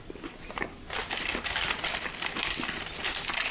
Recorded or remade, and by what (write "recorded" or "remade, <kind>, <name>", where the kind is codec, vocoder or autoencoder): recorded